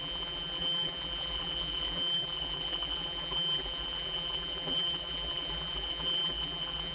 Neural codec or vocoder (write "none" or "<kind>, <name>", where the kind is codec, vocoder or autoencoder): vocoder, BigVGAN v2